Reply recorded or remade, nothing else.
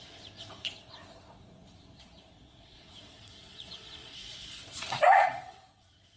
remade